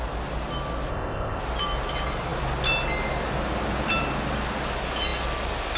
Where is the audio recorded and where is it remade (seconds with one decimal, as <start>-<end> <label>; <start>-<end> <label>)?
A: 0.0-0.9 recorded; 0.9-1.4 remade; 1.4-5.8 recorded